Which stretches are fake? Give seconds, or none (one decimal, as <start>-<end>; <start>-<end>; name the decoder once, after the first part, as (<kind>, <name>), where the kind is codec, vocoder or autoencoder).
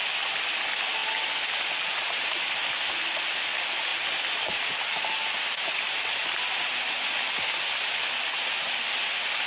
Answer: none